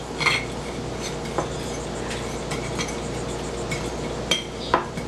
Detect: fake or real real